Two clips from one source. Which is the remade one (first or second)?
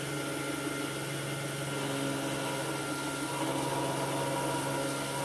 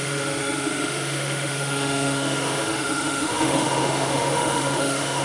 second